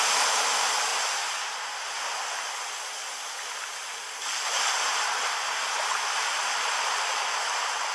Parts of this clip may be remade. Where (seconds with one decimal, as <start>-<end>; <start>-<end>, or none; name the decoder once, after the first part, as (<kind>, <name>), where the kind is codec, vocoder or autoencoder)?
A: 0.0-0.9 (vocoder, BigVGAN v2); 4.1-7.9

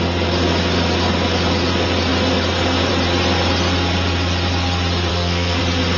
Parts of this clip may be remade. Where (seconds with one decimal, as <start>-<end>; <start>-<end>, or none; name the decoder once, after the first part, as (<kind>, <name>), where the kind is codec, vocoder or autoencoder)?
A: 5.1-5.6 (codec, SNAC)

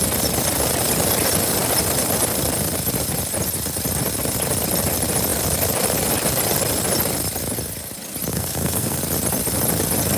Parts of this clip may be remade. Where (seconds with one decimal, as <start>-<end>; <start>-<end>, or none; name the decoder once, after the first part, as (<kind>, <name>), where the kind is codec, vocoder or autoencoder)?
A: 8.3-9.0 (codec, SNAC)

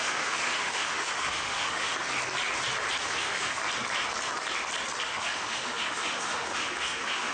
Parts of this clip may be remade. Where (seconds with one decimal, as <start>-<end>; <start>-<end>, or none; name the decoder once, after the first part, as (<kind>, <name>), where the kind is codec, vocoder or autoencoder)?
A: 0.0-1.9 (autoencoder, DAC-VAE); 3.0-3.6; 5.1-7.3

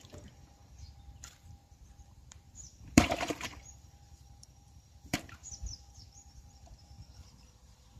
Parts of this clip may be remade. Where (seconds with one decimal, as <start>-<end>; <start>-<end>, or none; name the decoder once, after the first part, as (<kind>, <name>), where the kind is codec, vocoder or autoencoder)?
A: 0.0-8.0 (vocoder, BigVGAN v2)

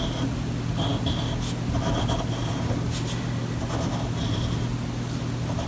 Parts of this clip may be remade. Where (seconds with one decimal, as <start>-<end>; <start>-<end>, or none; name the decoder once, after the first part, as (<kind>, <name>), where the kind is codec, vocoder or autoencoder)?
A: none

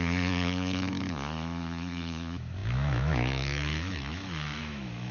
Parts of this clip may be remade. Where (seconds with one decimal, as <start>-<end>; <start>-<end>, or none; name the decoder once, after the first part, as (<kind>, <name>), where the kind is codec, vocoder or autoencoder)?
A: 0.0-5.1 (autoencoder, DAC-VAE)

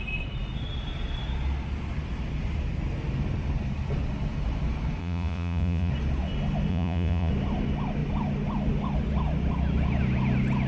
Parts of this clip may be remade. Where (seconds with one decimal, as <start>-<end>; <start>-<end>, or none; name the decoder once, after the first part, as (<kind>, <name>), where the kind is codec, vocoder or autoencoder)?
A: 5.0-5.9 (vocoder, Vocos); 6.7-7.3